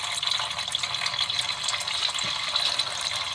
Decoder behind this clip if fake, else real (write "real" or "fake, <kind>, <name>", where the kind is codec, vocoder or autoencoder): real